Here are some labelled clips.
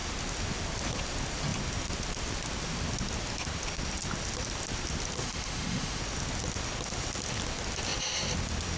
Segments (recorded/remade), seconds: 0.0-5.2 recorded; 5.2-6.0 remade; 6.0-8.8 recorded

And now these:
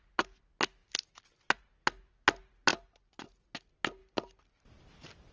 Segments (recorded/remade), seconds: 0.0-5.3 recorded

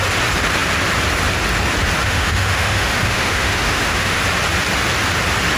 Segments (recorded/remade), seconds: 0.0-2.0 recorded; 2.0-4.2 remade; 4.2-5.6 recorded